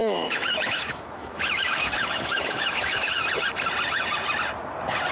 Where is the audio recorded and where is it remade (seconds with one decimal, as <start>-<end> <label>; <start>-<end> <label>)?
0.0-3.1 remade; 3.1-5.1 recorded